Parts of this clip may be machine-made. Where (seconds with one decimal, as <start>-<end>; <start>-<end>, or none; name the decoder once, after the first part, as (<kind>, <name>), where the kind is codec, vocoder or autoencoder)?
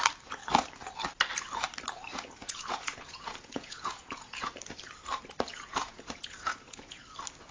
2.1-4.5 (vocoder, Vocos); 5.5-7.0